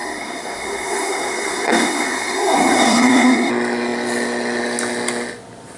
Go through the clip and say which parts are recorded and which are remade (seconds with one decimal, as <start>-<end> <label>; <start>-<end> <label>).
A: 0.0-3.5 remade; 3.5-5.8 recorded